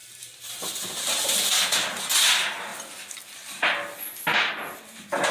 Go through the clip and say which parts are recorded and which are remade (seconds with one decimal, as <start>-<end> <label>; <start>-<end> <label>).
0.0-5.3 recorded